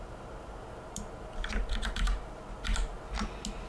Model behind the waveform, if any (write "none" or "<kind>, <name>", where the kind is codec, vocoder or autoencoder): none